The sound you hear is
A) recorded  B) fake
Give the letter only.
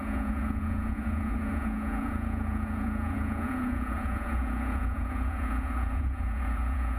B